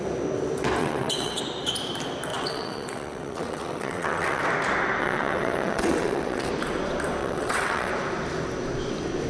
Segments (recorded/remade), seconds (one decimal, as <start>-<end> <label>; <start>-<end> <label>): 0.0-0.8 recorded; 0.8-1.4 remade; 1.4-2.3 recorded; 2.3-4.4 remade; 4.4-5.0 recorded; 5.0-6.5 remade; 6.5-7.2 recorded; 7.2-7.9 remade; 7.9-9.3 recorded